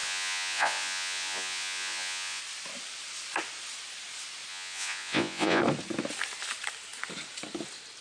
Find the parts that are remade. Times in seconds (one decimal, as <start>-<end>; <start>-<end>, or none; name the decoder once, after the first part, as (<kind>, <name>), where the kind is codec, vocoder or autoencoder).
0.0-2.4 (vocoder, Vocos); 4.5-5.6